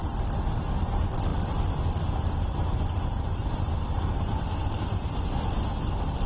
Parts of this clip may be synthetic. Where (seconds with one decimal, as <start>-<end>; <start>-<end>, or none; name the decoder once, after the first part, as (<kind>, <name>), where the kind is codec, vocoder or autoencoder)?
1.3-5.1 (vocoder, BigVGAN v2)